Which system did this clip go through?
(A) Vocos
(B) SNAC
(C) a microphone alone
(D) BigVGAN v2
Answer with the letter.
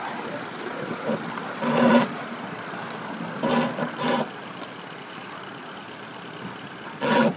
C